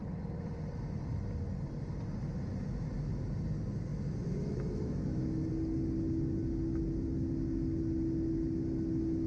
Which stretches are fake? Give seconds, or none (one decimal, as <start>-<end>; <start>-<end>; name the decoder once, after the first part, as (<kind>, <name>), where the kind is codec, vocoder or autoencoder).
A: 3.9-5.5 (autoencoder, DAC-VAE)